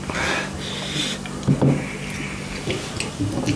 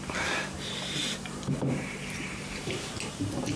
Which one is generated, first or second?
second